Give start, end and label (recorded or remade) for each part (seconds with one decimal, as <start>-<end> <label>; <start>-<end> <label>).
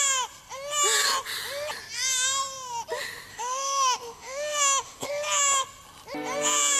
0.0-3.3 recorded; 3.3-5.1 remade; 5.1-6.8 recorded